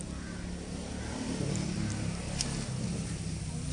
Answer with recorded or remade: recorded